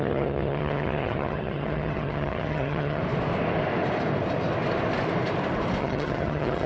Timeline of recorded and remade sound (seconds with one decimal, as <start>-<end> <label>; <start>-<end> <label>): 0.0-3.0 remade; 3.0-5.8 recorded; 5.8-6.7 remade